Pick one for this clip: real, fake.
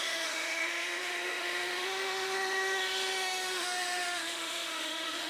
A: fake